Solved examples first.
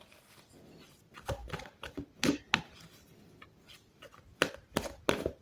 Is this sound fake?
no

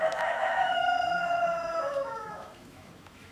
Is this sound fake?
yes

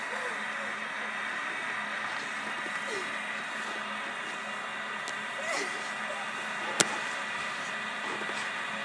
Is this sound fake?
no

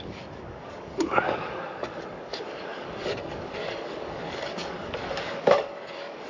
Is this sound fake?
yes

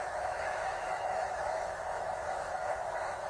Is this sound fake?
yes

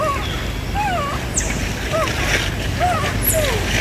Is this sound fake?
no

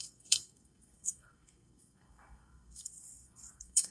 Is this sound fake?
yes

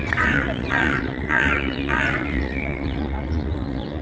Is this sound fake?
yes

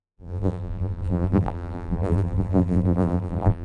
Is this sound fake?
yes